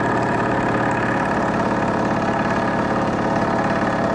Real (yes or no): yes